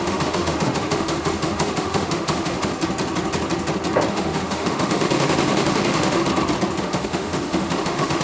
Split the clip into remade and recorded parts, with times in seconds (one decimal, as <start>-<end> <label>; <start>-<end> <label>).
0.0-2.7 remade; 2.7-4.1 recorded; 4.1-6.2 remade; 6.2-6.8 recorded; 6.8-8.2 remade